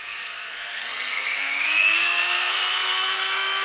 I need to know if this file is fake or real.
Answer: fake